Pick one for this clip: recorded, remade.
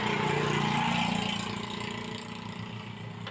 recorded